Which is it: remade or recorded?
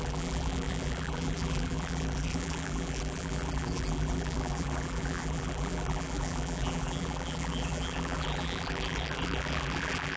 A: remade